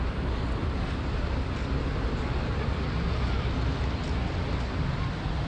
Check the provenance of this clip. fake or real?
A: real